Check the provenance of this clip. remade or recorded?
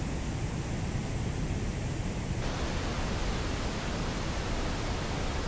recorded